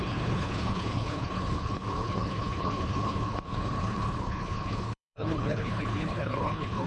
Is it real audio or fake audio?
fake